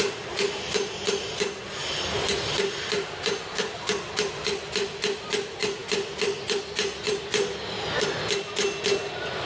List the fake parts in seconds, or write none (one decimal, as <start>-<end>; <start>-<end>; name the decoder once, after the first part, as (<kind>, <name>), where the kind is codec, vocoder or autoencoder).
none